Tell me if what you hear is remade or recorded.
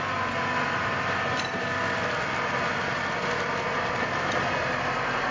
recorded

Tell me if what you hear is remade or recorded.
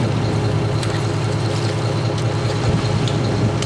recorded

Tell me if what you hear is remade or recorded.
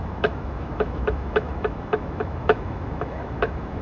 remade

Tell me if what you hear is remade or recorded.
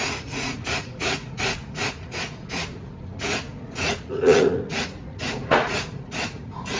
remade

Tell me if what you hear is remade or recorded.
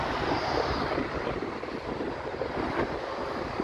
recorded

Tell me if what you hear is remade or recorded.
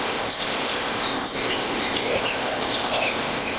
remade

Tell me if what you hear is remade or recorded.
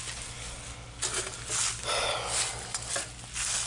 recorded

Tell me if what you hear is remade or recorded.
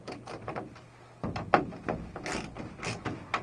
recorded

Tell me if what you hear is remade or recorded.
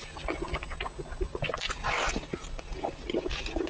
recorded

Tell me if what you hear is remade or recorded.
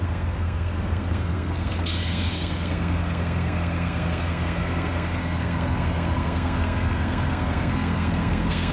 remade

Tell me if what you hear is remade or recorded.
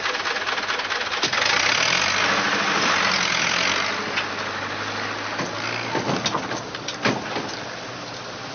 recorded